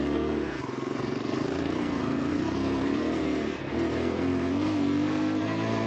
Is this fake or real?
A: fake